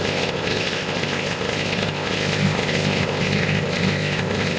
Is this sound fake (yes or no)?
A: yes